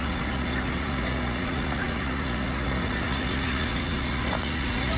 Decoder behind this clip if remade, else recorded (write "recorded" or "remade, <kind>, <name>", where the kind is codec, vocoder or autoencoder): remade, vocoder, Vocos